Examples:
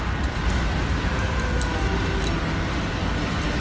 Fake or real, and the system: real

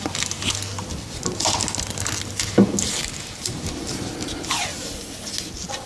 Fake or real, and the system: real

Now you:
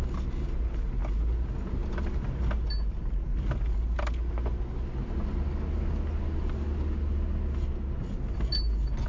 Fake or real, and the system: real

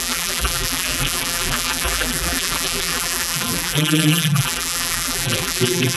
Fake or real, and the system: fake, vocoder, BigVGAN v2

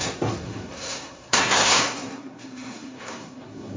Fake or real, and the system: fake, codec, SNAC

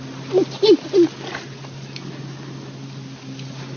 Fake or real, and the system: real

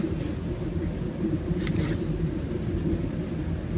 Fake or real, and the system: real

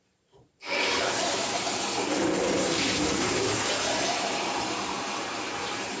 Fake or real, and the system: fake, vocoder, BigVGAN v2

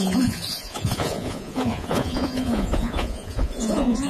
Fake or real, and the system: fake, vocoder, Vocos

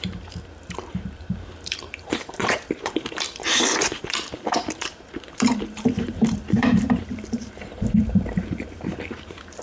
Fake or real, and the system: fake, vocoder, BigVGAN v2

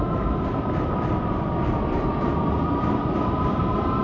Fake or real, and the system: real